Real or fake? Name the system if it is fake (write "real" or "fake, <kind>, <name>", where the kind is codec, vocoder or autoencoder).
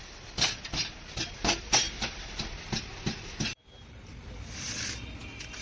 fake, vocoder, BigVGAN v2